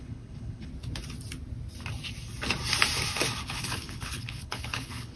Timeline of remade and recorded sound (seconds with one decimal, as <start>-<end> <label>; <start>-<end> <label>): 0.0-0.7 remade; 0.7-3.4 recorded; 3.4-5.2 remade